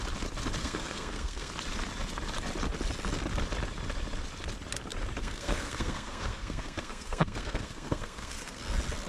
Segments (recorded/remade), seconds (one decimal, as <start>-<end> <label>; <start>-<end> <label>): 0.0-0.6 recorded; 0.6-1.5 remade; 1.5-5.2 recorded; 5.2-8.6 remade; 8.6-9.1 recorded